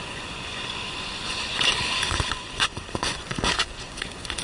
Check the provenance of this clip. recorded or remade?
remade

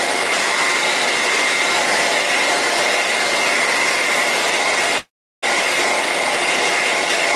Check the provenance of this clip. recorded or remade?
recorded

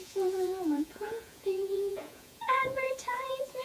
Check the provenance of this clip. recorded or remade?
remade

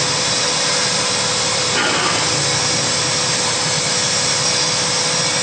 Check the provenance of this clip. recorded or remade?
recorded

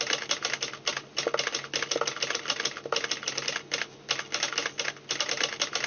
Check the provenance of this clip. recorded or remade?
recorded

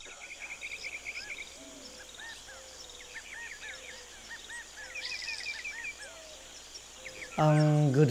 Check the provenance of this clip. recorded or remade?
recorded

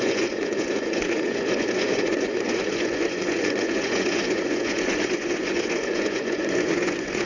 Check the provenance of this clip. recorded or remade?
remade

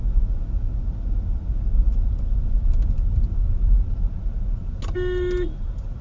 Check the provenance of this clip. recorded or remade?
recorded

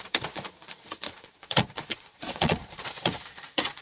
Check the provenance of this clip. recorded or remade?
remade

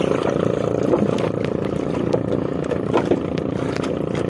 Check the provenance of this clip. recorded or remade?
recorded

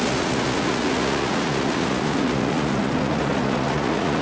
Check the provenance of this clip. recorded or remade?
remade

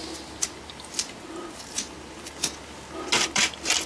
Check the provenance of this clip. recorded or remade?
recorded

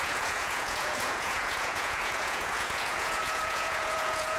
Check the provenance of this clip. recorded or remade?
remade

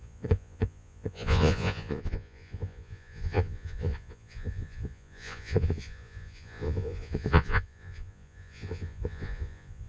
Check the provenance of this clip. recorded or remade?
remade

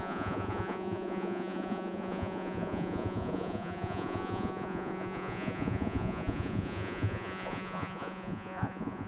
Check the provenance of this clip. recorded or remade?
remade